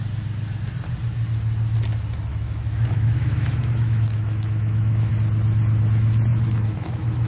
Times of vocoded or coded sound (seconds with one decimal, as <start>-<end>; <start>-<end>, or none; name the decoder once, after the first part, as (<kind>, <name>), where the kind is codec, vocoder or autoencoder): 2.3-5.1 (autoencoder, DAC-VAE); 6.3-7.3